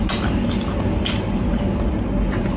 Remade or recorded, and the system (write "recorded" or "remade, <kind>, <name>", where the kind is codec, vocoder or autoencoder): recorded